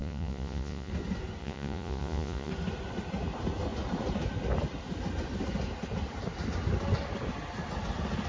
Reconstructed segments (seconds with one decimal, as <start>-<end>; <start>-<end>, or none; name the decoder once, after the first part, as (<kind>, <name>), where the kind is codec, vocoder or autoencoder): 0.0-0.9 (vocoder, Vocos); 1.4-2.5